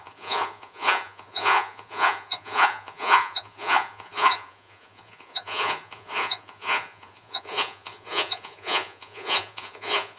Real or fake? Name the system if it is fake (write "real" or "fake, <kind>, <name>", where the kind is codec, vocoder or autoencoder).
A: fake, vocoder, Vocos